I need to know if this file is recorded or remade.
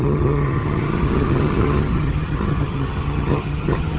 remade